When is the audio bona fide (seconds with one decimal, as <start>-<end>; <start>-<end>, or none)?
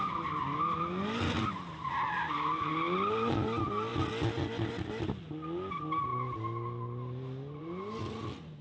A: 0.0-8.6